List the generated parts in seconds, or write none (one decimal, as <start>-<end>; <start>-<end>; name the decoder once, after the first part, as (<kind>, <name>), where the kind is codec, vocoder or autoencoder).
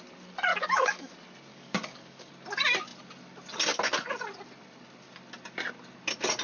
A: 0.5-1.1 (codec, DAC); 1.5-2.3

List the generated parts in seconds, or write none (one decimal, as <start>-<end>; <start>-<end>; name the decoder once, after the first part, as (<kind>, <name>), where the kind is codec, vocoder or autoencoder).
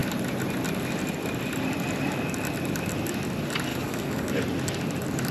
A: 3.7-4.4 (codec, DAC)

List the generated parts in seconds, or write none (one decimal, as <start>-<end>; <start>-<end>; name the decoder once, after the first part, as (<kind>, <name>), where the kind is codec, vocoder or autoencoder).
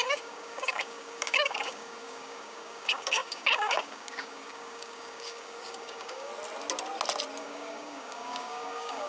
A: 0.0-6.3 (codec, DAC); 7.4-9.1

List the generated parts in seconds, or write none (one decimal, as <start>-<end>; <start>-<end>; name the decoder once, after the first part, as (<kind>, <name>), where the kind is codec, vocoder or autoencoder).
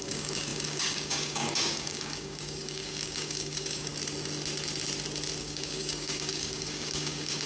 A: 0.0-3.9 (codec, DAC); 5.4-7.5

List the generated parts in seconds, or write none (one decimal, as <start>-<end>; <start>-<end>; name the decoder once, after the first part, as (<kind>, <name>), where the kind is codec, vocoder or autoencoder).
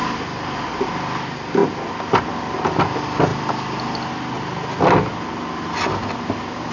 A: none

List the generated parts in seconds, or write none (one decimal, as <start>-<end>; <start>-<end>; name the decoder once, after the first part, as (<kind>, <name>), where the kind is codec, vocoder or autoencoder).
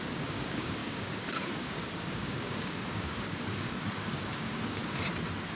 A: 0.0-4.8 (codec, DAC)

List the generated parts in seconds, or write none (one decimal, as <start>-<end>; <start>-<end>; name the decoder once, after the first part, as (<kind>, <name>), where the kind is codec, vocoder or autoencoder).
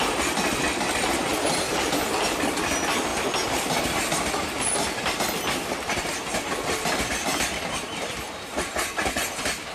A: none